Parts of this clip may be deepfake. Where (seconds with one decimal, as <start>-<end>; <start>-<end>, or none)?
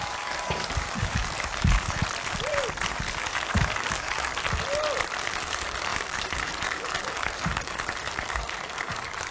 0.0-2.0; 2.9-4.3; 5.2-9.3